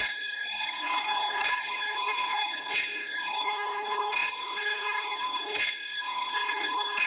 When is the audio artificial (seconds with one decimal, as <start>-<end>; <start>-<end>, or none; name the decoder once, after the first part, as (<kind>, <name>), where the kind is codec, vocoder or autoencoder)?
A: 0.0-7.1 (codec, HILCodec)